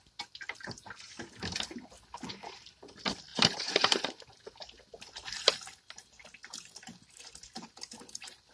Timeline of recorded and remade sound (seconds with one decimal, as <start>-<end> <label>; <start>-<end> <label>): 0.0-3.3 recorded; 3.3-4.3 remade; 4.3-8.5 recorded